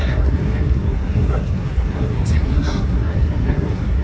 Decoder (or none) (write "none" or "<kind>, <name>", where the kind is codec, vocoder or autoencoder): codec, SNAC